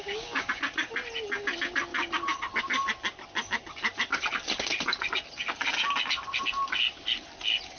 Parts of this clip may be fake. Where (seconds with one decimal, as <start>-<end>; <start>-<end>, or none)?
0.0-0.5